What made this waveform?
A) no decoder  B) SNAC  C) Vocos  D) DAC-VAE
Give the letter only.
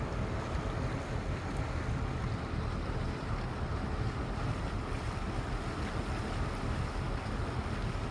A